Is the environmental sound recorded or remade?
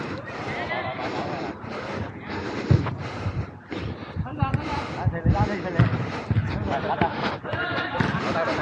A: recorded